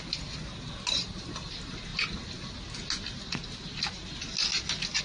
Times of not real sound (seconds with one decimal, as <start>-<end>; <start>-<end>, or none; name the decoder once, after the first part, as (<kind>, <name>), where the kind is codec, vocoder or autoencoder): none